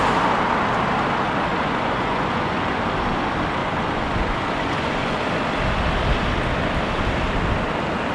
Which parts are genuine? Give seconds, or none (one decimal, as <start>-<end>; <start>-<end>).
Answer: 0.0-1.5; 2.8-3.6; 5.2-8.1